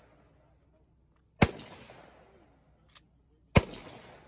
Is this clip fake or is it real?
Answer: real